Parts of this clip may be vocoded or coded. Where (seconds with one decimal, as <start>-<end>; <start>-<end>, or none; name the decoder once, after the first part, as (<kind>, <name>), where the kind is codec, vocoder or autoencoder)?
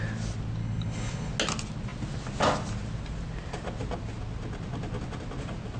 0.6-1.3 (codec, HILCodec)